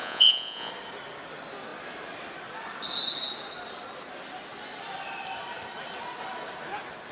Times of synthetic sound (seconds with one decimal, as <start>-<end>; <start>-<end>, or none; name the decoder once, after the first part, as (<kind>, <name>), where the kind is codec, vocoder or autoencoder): 0.0-0.7 (vocoder, Vocos)